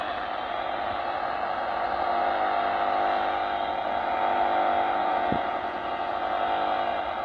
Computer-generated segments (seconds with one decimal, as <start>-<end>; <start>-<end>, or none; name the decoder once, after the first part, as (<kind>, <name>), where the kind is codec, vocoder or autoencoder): 5.0-6.1 (vocoder, Vocos)